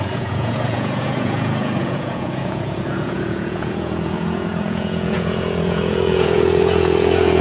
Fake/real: fake